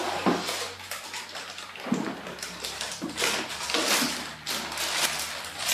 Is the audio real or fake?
real